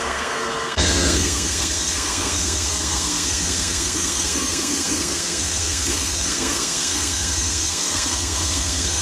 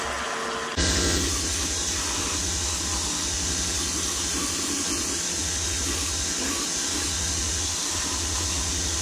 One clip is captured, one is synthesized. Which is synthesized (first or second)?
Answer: first